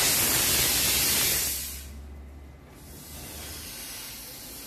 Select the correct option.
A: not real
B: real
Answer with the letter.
B